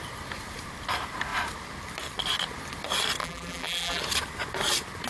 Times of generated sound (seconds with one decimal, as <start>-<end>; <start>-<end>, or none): 3.2-4.0